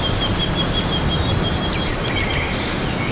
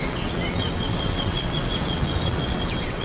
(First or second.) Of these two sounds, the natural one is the first